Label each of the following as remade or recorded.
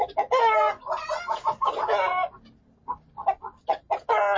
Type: recorded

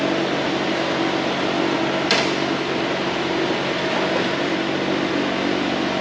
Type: recorded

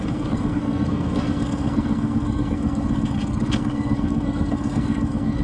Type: remade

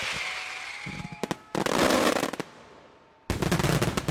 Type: recorded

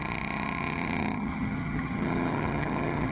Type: remade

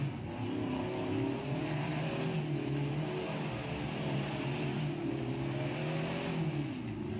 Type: recorded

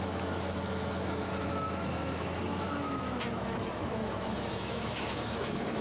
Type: remade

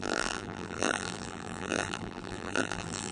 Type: remade